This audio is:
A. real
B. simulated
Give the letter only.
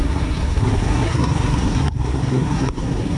B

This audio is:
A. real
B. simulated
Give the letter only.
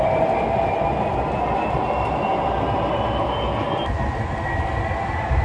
A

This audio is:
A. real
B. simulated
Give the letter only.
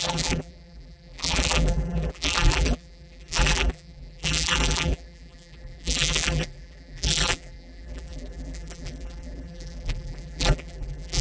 B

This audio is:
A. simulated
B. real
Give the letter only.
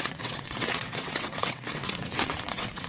A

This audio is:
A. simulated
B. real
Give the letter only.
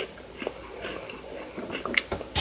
B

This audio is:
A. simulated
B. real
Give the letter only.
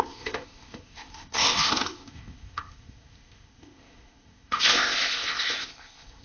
A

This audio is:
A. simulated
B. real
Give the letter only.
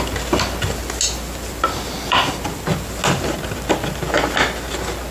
B